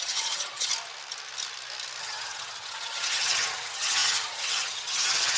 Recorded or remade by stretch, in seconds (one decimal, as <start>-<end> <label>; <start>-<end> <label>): 0.0-0.7 remade; 0.7-2.0 recorded; 2.0-5.4 remade